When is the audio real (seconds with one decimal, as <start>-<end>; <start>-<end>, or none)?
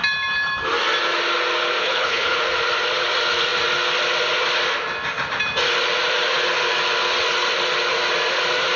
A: 0.0-1.8; 2.4-8.8